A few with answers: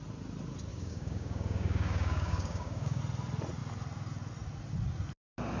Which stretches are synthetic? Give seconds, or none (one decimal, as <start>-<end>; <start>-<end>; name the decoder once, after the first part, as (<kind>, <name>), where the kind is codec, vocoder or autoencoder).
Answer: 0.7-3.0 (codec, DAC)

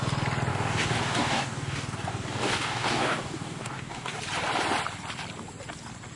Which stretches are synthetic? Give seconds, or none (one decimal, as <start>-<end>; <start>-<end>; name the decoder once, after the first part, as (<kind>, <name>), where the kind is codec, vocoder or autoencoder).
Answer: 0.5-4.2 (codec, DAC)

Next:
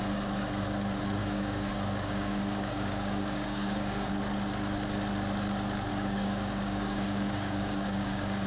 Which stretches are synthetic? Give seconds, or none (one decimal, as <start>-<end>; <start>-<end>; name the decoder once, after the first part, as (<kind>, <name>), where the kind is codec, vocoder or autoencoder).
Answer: 1.2-4.1 (codec, DAC); 5.9-8.5

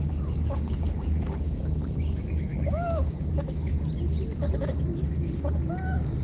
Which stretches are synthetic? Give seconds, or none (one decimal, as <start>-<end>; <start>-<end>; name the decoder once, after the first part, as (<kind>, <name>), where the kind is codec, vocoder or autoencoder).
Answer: 0.0-3.7 (codec, DAC); 5.1-6.2

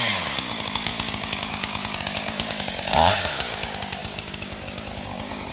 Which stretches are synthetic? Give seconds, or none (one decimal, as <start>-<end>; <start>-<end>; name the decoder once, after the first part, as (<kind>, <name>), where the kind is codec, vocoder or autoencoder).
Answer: 0.0-5.5 (codec, DAC)

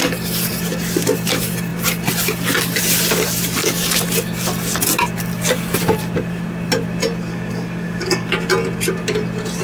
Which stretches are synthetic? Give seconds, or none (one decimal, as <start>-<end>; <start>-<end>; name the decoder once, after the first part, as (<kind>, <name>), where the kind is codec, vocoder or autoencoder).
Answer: 7.3-8.3 (codec, DAC)